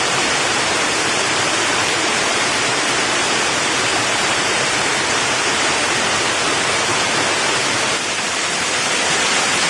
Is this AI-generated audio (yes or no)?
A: yes